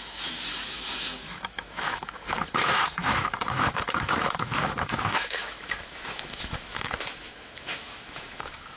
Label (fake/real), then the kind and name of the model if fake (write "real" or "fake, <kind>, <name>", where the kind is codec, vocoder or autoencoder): fake, autoencoder, DAC-VAE